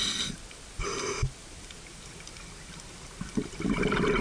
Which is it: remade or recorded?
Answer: recorded